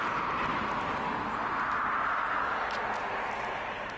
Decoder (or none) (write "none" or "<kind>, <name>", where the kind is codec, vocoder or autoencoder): none